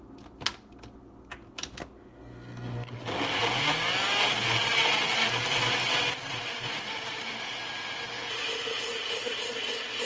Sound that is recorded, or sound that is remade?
recorded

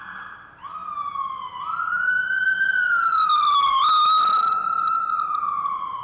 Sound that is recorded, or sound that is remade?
recorded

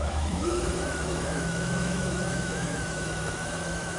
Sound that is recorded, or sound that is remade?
remade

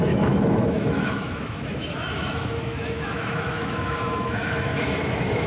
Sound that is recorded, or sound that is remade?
remade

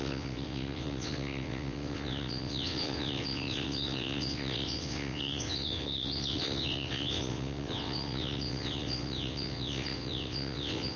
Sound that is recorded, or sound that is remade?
remade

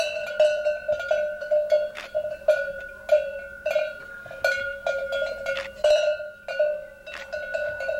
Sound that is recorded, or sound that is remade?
recorded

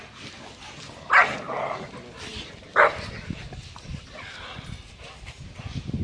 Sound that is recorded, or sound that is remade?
recorded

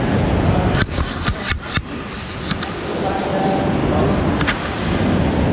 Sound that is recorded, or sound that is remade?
recorded